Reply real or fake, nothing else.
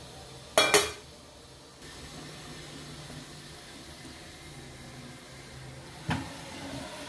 real